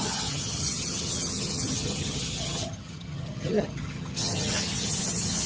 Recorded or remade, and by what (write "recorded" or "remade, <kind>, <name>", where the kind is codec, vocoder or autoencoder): remade, vocoder, HiFi-GAN